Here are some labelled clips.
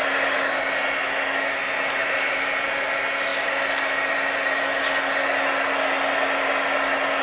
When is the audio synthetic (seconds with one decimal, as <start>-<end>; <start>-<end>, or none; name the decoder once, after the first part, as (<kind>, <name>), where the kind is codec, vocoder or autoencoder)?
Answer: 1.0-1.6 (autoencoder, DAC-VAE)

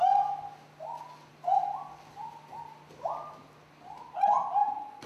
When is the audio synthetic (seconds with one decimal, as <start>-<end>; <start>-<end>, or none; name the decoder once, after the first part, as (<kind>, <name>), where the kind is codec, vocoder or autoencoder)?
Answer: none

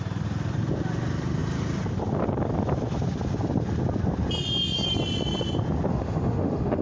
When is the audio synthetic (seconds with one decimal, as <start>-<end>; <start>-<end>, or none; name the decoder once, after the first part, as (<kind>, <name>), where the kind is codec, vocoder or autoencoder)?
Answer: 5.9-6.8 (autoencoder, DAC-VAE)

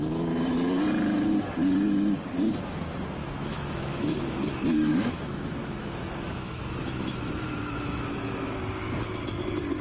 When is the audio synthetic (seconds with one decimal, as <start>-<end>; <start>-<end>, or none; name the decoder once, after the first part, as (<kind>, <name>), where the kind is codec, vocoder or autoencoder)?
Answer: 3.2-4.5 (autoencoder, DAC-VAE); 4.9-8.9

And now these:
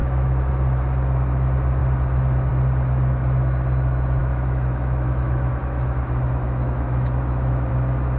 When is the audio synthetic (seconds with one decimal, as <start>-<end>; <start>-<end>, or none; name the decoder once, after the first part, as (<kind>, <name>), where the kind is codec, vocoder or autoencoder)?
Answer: 0.0-0.5 (autoencoder, DAC-VAE); 4.2-7.7

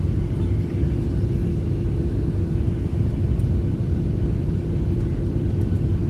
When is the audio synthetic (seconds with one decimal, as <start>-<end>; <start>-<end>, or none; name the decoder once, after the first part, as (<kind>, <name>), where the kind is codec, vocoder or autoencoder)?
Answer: 1.5-3.1 (autoencoder, DAC-VAE)

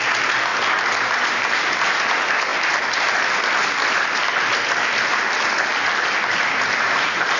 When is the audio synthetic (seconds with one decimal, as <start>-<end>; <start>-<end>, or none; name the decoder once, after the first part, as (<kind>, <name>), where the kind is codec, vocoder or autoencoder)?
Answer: none